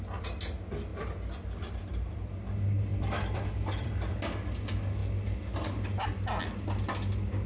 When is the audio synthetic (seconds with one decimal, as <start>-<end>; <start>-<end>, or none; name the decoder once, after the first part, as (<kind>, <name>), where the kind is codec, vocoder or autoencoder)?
2.9-4.1 (vocoder, BigVGAN v2)